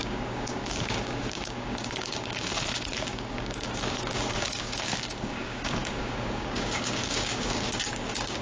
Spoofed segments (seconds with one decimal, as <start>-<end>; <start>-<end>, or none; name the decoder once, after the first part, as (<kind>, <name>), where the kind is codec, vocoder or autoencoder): 0.0-8.4 (codec, DAC)